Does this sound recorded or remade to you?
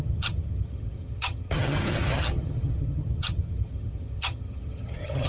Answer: remade